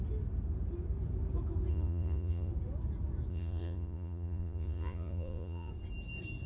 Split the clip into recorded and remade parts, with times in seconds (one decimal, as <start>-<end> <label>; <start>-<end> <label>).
0.0-1.7 recorded; 1.7-2.5 remade; 2.5-3.3 recorded; 3.3-5.7 remade; 5.7-6.5 recorded